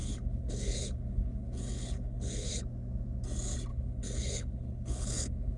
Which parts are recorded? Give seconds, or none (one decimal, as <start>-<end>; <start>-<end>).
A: 2.6-3.7